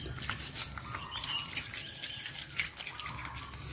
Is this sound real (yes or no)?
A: yes